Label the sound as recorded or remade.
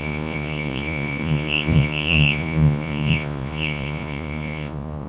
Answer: remade